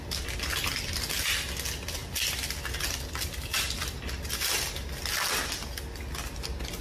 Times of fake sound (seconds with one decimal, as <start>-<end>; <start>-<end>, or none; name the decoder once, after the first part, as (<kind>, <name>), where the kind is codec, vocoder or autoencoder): none